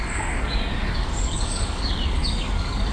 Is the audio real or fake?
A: fake